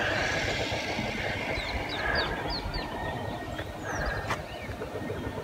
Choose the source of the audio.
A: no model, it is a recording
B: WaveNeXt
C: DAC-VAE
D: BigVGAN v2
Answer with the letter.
A